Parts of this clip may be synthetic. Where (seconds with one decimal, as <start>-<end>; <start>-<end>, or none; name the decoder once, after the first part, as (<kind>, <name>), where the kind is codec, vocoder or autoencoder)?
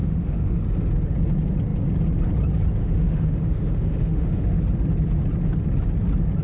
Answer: 0.0-0.6 (autoencoder, DAC-VAE); 2.8-4.6